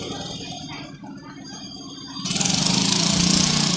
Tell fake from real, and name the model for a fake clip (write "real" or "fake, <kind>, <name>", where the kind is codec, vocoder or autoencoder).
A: real